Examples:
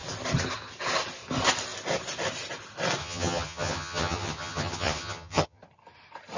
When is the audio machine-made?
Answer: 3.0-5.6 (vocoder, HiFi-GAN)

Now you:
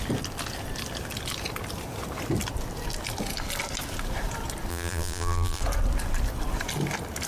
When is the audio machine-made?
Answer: 4.7-5.6 (vocoder, BigVGAN v2)